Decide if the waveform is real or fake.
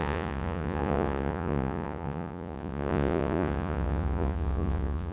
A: fake